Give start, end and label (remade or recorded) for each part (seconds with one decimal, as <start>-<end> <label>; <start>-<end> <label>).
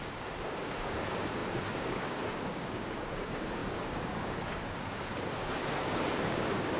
0.0-6.8 remade